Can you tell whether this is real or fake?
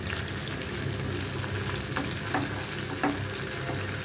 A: real